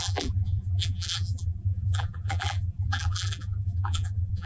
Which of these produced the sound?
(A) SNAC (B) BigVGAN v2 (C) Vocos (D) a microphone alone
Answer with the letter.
B